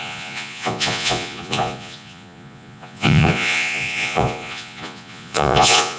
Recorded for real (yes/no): no